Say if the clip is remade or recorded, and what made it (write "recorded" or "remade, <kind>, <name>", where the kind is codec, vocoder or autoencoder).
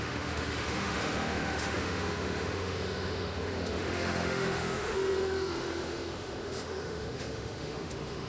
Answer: remade, autoencoder, DAC-VAE